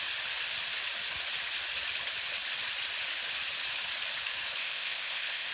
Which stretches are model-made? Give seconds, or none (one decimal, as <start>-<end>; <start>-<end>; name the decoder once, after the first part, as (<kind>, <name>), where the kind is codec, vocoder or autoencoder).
4.6-5.5 (codec, ZipCodec)